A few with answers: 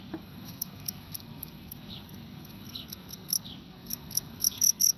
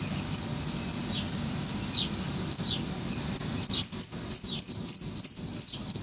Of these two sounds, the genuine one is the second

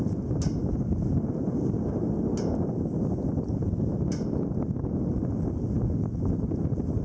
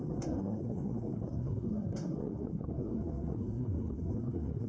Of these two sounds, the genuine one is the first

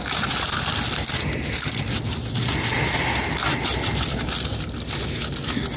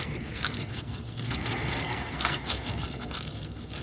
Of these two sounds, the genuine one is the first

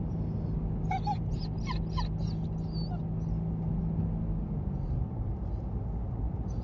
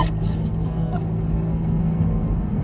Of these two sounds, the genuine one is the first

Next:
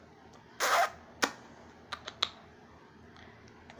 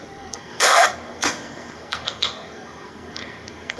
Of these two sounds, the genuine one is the first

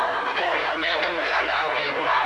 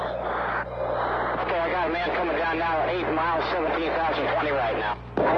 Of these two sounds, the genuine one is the second